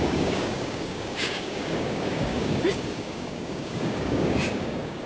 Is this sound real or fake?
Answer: fake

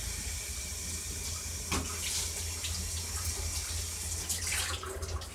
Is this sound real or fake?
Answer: real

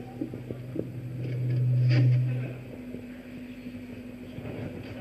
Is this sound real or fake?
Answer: real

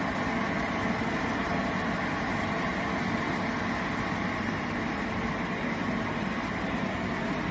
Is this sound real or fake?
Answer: real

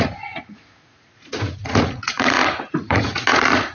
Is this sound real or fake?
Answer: fake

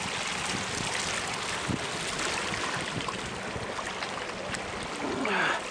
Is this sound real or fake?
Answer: real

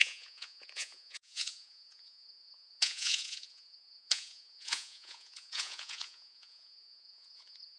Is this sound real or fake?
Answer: fake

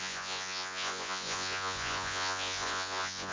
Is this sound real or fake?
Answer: fake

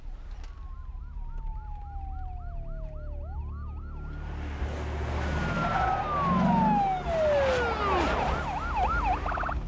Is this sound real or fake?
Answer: real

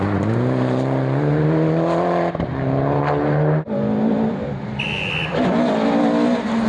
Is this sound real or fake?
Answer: real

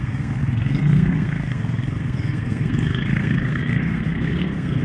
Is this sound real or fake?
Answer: fake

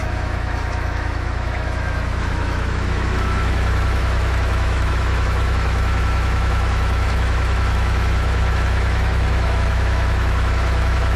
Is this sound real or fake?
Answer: fake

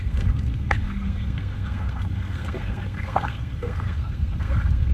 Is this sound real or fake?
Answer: fake